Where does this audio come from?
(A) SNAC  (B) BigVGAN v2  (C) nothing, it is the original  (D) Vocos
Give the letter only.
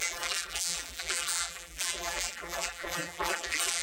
B